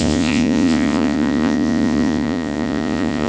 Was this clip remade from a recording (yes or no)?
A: yes